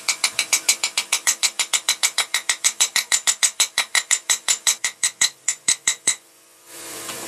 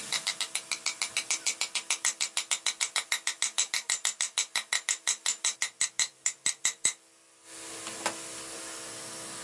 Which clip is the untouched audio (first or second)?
second